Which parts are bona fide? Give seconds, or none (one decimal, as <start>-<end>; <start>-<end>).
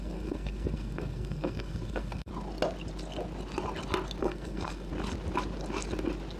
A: 2.3-4.2; 4.9-6.4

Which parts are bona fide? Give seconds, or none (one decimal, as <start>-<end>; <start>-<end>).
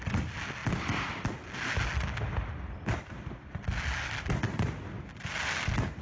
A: 0.0-6.0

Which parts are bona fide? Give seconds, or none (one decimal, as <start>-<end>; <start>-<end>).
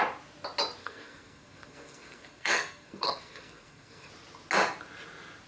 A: 0.0-0.8; 4.1-5.5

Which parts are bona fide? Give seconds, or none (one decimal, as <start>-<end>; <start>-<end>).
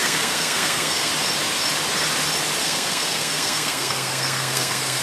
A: 1.1-2.6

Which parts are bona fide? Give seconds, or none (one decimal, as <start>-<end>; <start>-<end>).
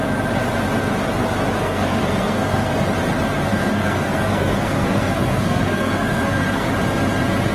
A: 0.0-1.6; 2.7-3.5; 6.7-7.5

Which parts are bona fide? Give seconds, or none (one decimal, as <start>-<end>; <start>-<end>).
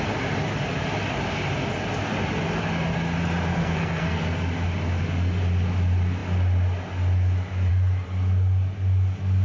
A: 0.0-3.5; 4.2-9.4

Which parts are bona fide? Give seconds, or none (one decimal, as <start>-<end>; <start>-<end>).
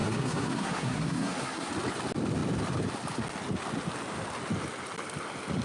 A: 1.7-5.6